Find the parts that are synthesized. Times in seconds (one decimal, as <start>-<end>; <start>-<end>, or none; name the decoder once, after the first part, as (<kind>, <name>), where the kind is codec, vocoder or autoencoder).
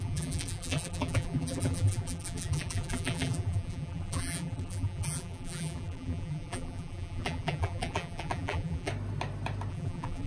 0.0-8.9 (vocoder, BigVGAN v2); 9.7-10.3